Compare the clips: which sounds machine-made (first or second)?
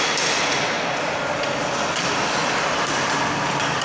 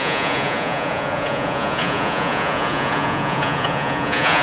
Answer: second